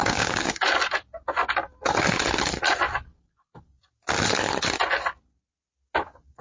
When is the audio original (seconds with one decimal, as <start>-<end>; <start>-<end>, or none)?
0.7-6.4